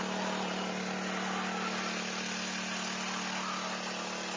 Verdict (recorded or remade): recorded